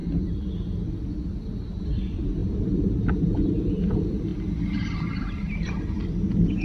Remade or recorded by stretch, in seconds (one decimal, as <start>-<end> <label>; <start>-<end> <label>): 0.0-1.8 recorded; 1.8-4.3 remade; 4.3-5.0 recorded; 5.0-6.6 remade